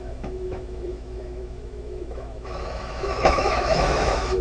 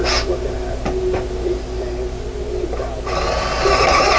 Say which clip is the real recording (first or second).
second